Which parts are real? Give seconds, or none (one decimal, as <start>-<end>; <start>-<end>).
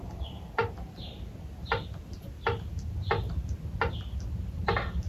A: 0.0-5.1